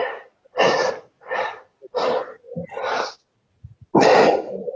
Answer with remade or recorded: recorded